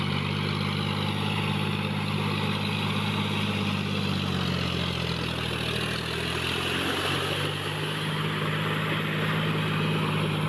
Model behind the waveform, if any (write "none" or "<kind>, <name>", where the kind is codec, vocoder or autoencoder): none